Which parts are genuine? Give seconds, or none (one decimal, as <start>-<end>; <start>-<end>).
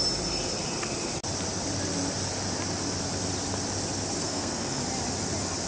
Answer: 0.0-4.2; 4.8-5.7